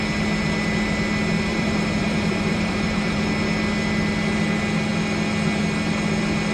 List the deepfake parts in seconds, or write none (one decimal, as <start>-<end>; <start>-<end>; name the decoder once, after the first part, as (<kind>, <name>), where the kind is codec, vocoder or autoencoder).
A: 1.5-3.2 (vocoder, BigVGAN v2)